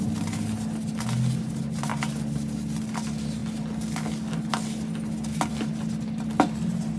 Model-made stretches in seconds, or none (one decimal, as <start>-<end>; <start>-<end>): none